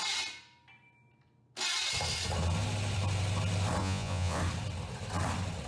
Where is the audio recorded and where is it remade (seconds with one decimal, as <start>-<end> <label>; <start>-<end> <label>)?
0.0-3.8 recorded; 3.8-4.4 remade; 4.4-5.7 recorded